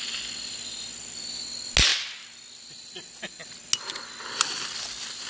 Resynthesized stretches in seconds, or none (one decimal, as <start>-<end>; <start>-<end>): none